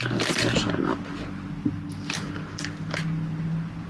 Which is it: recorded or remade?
recorded